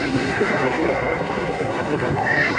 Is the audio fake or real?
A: fake